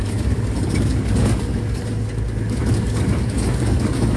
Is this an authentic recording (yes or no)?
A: no